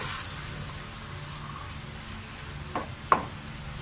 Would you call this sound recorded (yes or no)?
yes